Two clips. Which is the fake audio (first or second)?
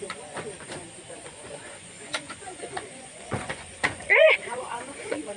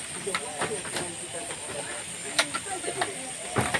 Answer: first